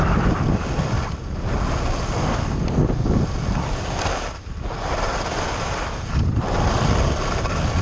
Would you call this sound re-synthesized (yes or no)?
no